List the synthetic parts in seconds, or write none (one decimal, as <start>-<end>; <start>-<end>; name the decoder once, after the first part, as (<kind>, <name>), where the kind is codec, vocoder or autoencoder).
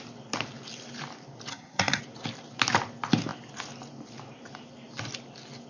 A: 1.5-2.0 (codec, SNAC)